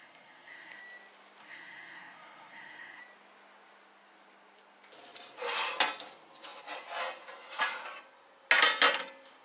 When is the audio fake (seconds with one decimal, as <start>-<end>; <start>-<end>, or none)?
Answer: 0.0-0.8; 1.4-3.0